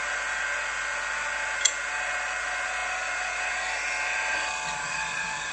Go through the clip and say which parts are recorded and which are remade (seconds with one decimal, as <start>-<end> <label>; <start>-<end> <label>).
0.0-5.5 recorded